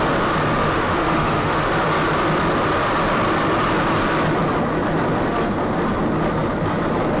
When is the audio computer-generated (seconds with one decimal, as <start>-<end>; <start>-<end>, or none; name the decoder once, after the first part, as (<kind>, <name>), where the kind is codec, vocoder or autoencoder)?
0.6-1.7 (autoencoder, DAC-VAE)